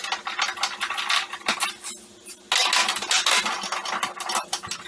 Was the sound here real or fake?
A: real